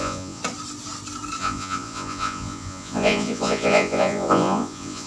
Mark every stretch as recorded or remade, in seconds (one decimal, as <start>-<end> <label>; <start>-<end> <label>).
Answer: 0.0-0.4 remade; 0.4-1.4 recorded; 1.4-5.1 remade